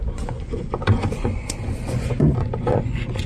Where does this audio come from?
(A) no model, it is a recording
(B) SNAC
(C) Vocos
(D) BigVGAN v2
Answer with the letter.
C